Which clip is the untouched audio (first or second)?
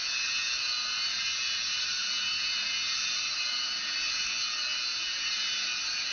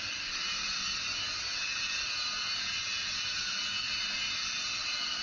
first